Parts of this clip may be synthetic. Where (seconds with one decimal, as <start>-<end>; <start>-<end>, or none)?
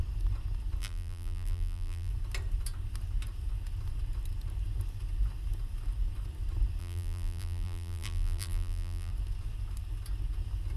0.8-2.1; 6.8-9.1